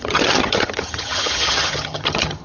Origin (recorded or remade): remade